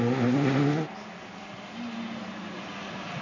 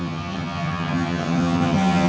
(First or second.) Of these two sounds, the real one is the first